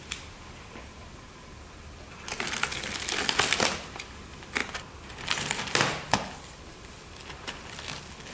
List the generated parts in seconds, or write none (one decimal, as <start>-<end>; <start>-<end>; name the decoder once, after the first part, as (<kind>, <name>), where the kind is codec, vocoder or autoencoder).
none